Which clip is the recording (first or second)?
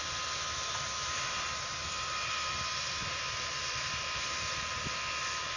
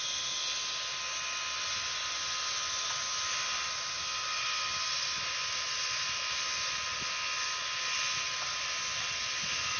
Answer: second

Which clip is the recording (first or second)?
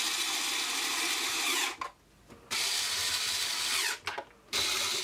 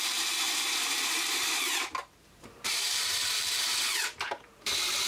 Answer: first